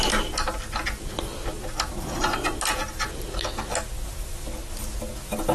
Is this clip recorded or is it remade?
recorded